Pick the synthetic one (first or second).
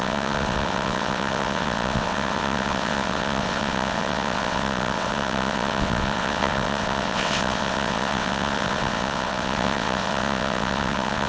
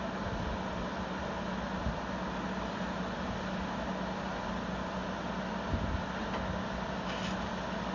first